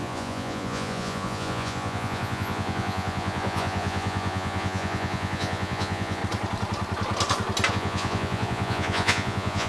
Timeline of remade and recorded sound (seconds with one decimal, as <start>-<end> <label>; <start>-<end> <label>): 0.0-6.2 remade; 6.2-7.7 recorded; 7.7-9.7 remade